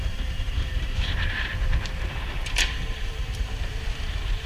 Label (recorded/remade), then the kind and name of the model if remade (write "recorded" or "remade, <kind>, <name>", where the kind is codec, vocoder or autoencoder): remade, vocoder, BigVGAN v2